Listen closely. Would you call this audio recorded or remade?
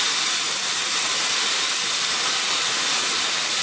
recorded